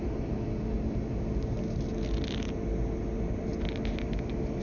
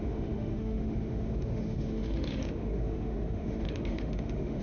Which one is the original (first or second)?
first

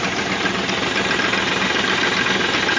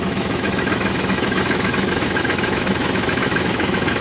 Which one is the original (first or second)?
first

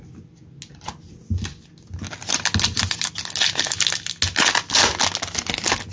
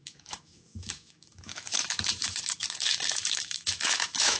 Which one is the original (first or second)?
first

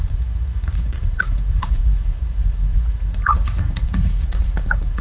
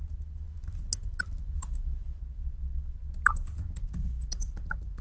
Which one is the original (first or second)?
second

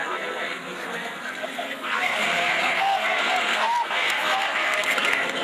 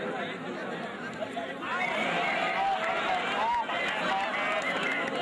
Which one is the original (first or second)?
second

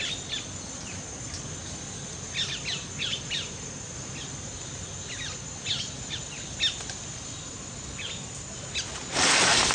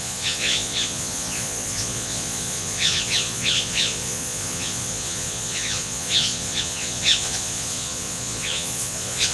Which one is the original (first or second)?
first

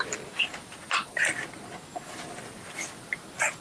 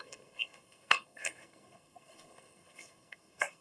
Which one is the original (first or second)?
first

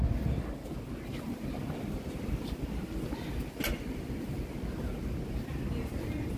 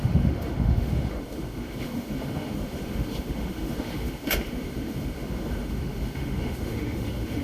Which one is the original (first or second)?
first